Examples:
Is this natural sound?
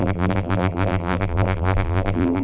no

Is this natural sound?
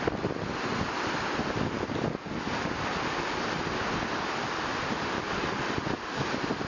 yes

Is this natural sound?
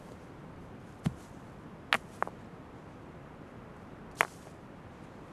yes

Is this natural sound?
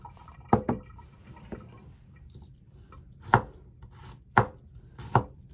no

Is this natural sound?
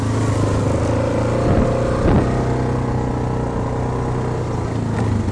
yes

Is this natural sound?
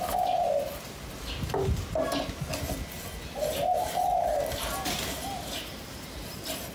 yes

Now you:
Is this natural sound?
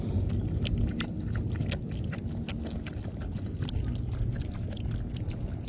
yes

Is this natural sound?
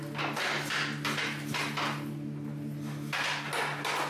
yes